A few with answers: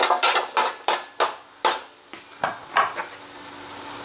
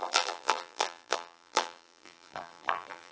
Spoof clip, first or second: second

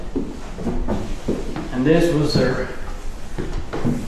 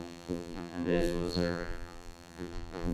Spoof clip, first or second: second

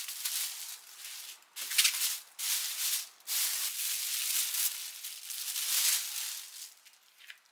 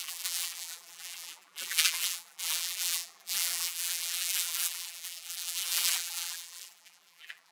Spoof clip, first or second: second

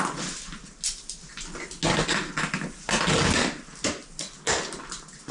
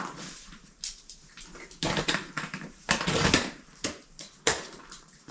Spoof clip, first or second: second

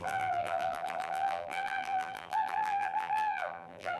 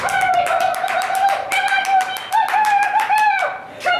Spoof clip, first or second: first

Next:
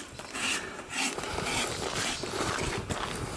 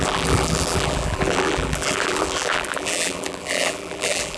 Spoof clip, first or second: second